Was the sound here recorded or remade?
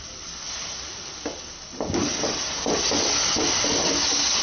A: recorded